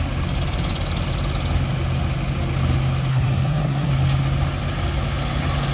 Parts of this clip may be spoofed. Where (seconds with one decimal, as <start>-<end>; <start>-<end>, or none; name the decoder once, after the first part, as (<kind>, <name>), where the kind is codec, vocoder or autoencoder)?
3.1-3.9 (codec, SNAC)

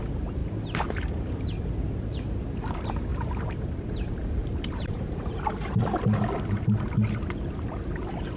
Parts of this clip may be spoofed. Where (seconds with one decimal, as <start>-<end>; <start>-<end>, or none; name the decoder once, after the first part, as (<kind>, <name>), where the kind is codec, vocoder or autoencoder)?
0.4-1.3 (vocoder, BigVGAN v2); 3.1-3.9; 4.4-5.8

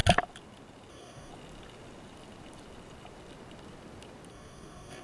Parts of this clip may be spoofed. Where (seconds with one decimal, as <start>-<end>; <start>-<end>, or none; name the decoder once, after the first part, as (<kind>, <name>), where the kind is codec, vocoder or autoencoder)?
0.9-1.3 (codec, DAC); 4.3-5.0

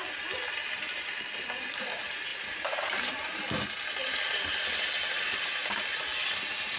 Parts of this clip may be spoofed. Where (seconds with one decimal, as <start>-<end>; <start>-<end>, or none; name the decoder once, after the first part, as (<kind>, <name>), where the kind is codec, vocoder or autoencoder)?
2.3-3.4 (vocoder, BigVGAN v2); 5.0-5.8

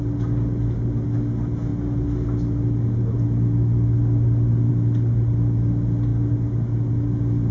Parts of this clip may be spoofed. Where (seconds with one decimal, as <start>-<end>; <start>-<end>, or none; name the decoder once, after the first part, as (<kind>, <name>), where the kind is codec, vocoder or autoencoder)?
none

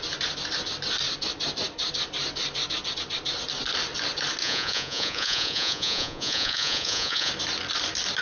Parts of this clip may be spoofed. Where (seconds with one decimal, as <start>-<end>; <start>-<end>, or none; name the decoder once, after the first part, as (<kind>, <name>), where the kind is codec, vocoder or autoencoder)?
4.4-7.3 (vocoder, Vocos)